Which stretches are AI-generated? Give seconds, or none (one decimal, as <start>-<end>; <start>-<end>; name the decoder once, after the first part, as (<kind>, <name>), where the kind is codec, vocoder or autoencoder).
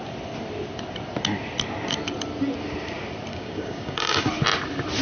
3.3-4.3 (codec, DAC)